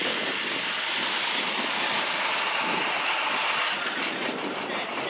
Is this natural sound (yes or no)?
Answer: yes